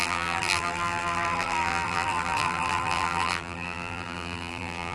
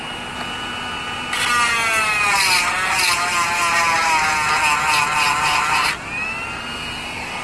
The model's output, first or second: first